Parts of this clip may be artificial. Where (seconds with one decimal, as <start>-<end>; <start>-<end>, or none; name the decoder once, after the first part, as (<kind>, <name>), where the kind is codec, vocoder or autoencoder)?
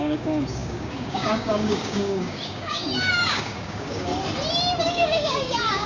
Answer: 0.0-4.1 (codec, DAC); 4.8-5.9